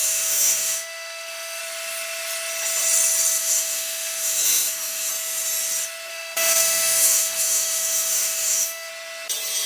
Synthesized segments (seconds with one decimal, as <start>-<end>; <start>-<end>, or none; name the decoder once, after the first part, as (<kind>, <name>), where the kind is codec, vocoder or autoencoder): 0.0-1.6 (autoencoder, DAC-VAE); 3.4-5.1; 6.1-8.9